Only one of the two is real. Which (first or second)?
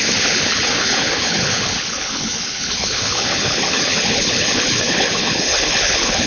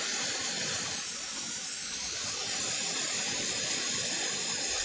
second